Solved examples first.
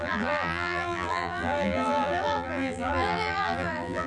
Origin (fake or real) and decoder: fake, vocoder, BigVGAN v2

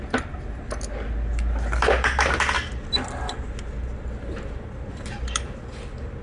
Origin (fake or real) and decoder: real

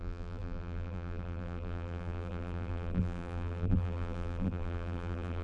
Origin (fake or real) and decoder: fake, vocoder, BigVGAN v2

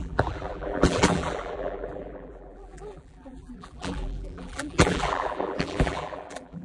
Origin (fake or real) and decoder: fake, vocoder, BigVGAN v2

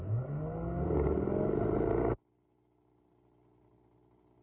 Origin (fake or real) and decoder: real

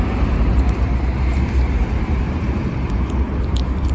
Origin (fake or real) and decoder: fake, vocoder, BigVGAN v2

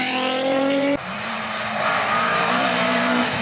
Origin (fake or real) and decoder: fake, vocoder, BigVGAN v2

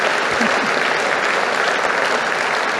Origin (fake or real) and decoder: real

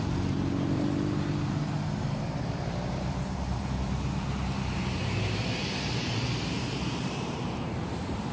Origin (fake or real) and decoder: fake, vocoder, BigVGAN v2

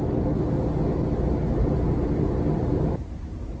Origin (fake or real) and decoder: real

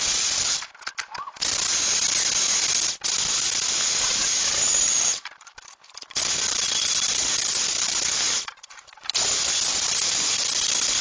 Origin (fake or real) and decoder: fake, vocoder, BigVGAN v2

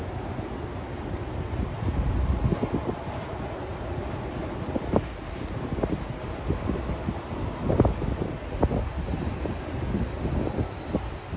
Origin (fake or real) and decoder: real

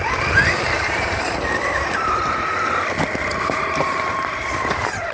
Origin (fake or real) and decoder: fake, vocoder, BigVGAN v2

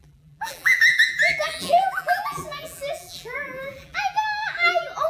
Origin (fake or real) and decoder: fake, vocoder, BigVGAN v2